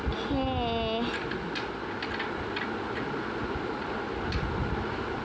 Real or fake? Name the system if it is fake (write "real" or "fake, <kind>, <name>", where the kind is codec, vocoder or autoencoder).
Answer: real